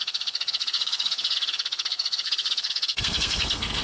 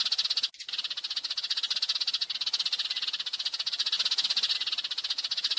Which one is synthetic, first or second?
first